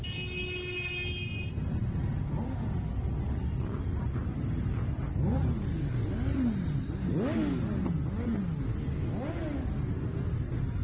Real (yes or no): yes